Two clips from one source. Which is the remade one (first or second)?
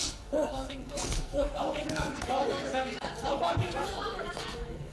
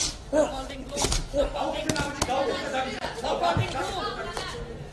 first